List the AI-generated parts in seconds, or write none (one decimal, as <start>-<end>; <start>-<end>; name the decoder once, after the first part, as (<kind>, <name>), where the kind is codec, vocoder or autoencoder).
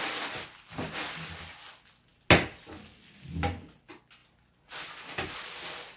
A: none